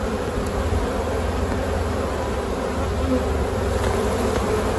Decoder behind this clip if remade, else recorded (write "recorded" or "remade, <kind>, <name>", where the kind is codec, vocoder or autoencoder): recorded